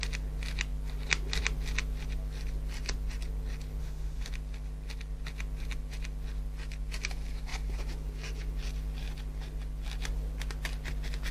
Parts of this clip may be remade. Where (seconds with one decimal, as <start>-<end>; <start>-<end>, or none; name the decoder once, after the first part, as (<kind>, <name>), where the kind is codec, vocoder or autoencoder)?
3.8-4.3 (autoencoder, DAC-VAE)